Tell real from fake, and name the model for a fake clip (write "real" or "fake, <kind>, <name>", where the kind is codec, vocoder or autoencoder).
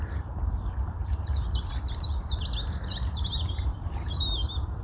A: fake, vocoder, BigVGAN v2